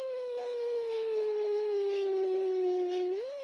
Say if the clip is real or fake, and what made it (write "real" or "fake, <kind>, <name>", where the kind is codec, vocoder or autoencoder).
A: fake, codec, HILCodec